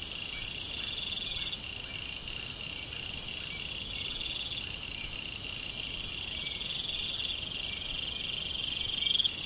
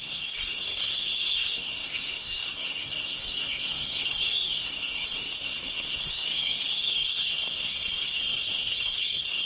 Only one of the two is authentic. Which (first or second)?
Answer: first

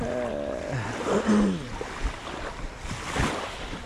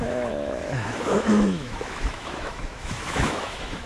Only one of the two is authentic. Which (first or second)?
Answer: first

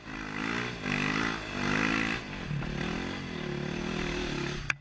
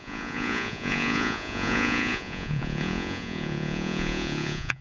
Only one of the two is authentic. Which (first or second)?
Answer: first